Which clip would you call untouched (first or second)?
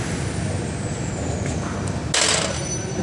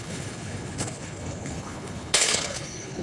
first